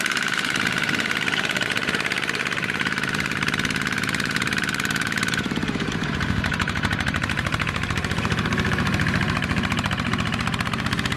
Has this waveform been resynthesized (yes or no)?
yes